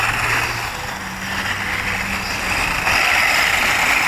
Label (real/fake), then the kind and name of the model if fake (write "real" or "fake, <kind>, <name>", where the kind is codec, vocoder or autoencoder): real